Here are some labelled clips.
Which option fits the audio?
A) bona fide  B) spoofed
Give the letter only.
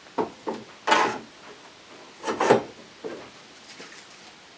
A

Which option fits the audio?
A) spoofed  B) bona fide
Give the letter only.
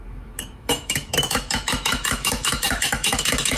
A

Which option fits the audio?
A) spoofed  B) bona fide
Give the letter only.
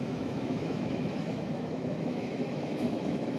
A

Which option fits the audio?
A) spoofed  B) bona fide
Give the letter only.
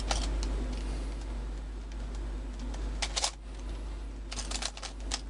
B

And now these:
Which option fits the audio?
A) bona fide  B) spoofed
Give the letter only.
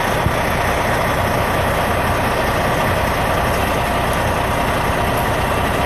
A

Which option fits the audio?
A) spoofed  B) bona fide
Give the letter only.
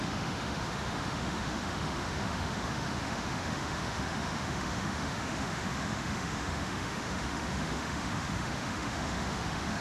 A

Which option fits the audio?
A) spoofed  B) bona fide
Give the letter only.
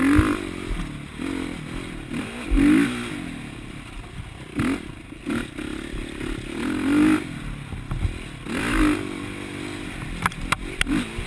B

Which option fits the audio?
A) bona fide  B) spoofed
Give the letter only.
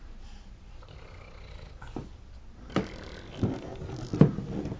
A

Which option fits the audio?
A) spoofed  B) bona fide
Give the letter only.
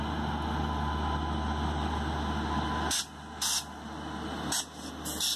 B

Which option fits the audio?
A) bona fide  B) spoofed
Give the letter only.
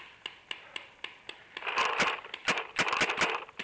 A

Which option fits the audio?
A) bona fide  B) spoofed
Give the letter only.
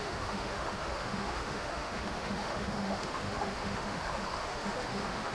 B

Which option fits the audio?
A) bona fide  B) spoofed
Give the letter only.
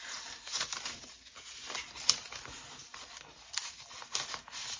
A